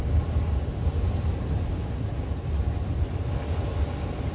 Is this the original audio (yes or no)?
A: yes